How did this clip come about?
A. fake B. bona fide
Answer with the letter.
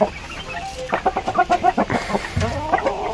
B